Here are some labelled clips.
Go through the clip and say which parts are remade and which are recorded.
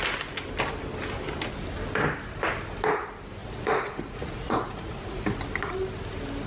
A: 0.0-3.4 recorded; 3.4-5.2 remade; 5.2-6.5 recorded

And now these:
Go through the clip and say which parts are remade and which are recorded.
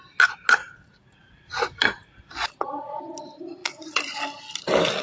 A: 0.0-0.6 recorded; 0.6-3.0 remade; 3.0-3.6 recorded; 3.6-4.2 remade; 4.2-5.0 recorded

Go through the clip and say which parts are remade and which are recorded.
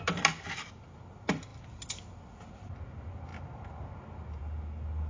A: 0.0-5.1 recorded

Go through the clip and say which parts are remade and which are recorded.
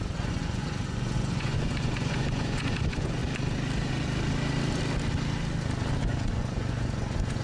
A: 0.0-3.2 remade; 3.2-6.0 recorded; 6.0-7.4 remade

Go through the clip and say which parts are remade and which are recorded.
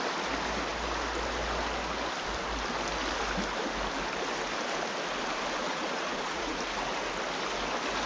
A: 0.0-5.6 recorded; 5.6-6.6 remade; 6.6-8.1 recorded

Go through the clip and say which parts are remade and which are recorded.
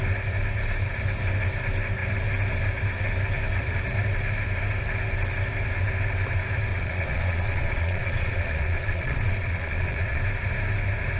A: 0.0-6.7 recorded; 6.7-10.2 remade; 10.2-11.2 recorded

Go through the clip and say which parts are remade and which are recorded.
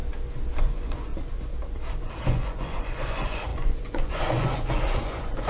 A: 0.0-0.6 recorded; 0.6-1.1 remade; 1.1-2.0 recorded; 2.0-5.5 remade